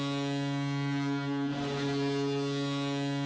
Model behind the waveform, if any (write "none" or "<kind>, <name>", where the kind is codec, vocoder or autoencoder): none